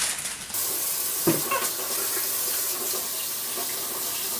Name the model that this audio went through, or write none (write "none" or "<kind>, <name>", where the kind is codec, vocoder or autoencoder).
none